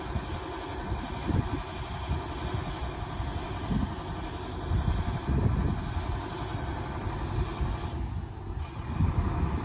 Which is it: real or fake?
real